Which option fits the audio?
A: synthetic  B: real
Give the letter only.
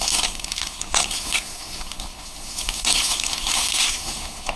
A